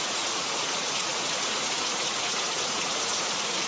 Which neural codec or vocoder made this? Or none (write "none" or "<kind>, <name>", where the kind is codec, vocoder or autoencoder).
vocoder, Vocos